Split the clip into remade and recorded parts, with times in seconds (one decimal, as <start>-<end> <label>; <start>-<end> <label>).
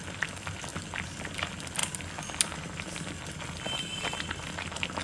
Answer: 0.0-5.0 recorded